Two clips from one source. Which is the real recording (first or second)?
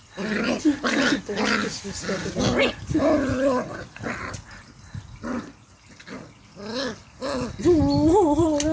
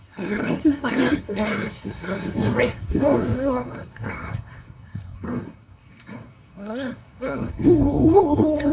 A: first